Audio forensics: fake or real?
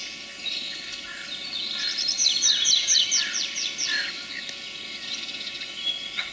real